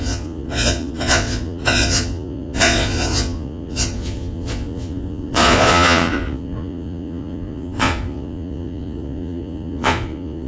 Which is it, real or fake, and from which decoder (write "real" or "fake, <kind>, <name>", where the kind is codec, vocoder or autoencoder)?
fake, vocoder, Vocos